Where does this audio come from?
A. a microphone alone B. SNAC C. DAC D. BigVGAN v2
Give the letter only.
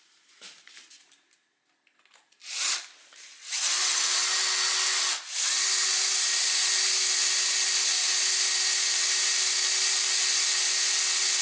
A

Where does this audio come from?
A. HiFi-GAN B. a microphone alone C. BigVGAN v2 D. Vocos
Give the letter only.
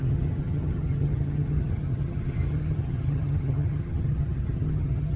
A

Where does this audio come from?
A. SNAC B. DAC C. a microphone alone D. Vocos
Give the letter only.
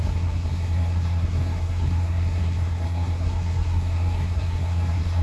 A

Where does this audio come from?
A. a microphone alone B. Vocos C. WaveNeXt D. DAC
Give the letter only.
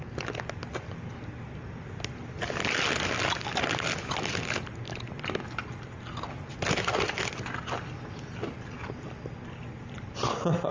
A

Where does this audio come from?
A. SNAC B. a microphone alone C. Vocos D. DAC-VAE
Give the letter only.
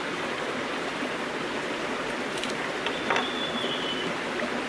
B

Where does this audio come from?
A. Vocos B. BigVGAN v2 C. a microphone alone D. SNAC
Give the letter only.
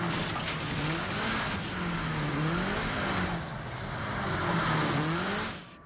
C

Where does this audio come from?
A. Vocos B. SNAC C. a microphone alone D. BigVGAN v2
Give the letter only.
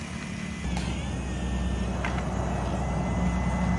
C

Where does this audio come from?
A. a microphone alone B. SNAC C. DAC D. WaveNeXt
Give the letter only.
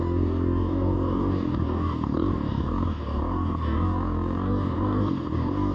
C